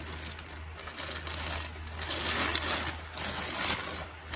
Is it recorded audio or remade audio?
recorded